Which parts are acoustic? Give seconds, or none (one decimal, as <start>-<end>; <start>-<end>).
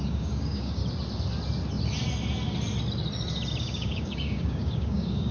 0.8-3.6